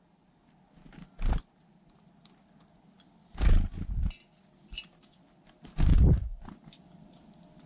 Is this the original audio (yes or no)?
yes